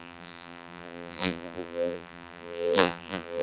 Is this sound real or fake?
fake